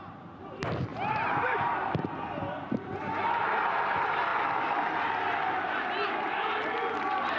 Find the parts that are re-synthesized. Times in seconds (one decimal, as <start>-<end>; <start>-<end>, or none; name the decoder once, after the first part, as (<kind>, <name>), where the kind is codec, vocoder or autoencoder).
0.9-1.7 (vocoder, BigVGAN v2)